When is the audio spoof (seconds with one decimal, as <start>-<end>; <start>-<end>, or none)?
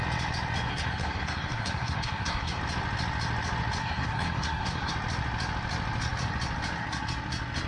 0.7-2.6; 3.8-4.9